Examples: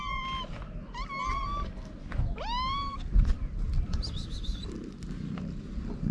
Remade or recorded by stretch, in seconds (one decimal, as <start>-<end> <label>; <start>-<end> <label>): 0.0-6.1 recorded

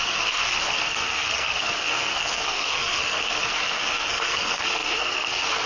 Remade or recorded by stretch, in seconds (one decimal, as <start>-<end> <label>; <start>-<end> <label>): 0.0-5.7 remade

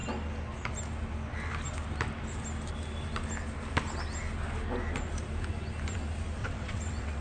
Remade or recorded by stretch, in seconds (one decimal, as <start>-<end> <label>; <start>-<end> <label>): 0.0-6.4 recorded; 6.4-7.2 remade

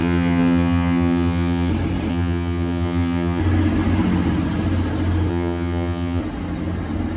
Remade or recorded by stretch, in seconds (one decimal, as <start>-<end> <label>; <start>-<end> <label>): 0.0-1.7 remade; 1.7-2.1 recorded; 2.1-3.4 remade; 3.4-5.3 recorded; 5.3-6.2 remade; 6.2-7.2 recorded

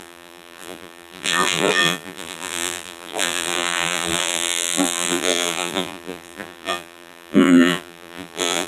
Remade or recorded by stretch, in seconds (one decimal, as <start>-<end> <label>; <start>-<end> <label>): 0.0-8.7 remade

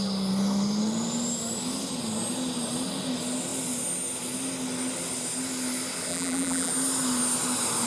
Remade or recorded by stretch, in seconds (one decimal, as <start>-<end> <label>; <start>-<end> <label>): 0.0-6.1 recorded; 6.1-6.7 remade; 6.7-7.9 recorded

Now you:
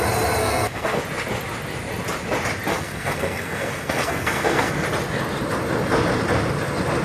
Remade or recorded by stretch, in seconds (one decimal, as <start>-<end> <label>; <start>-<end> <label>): 0.0-0.4 recorded; 0.4-1.0 remade; 1.0-2.7 recorded; 2.7-4.7 remade; 4.7-7.0 recorded

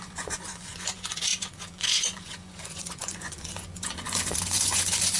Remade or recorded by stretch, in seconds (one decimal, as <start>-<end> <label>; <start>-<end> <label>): 0.0-5.2 remade